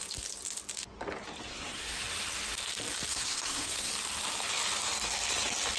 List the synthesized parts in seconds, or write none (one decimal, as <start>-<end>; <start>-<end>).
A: 1.5-2.0; 3.1-3.9